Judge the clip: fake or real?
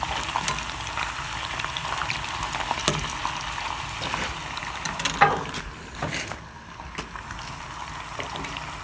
real